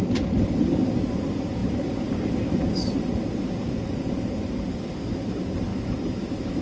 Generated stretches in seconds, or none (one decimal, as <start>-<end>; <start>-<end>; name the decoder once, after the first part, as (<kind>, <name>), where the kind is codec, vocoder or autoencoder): 5.7-6.6 (autoencoder, DAC-VAE)

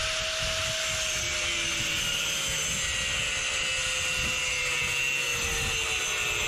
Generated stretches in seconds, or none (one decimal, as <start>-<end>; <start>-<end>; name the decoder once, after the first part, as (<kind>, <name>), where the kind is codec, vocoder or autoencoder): none

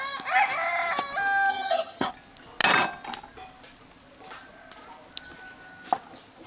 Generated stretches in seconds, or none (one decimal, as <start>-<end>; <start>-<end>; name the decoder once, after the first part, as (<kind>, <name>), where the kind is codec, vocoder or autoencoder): 1.5-2.1 (vocoder, HiFi-GAN)

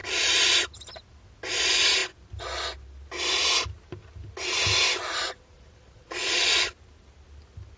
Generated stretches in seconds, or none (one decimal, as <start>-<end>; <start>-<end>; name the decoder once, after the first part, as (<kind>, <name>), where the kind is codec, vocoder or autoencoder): 5.5-6.7 (vocoder, Vocos)